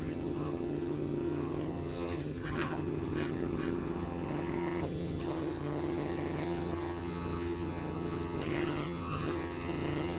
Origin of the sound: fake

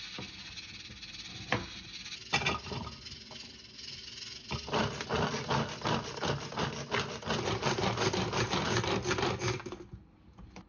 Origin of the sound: real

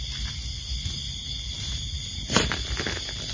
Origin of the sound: real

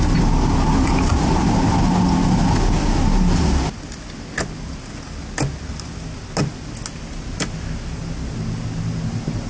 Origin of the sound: real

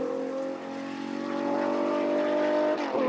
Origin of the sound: real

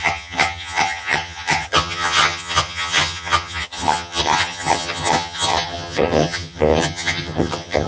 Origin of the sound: fake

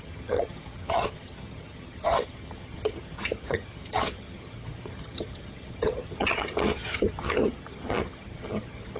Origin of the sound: fake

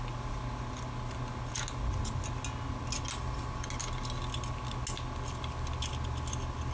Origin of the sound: real